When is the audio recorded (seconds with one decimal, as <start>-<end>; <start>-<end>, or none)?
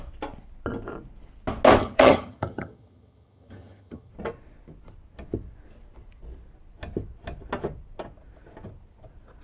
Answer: 0.0-1.8; 4.1-9.4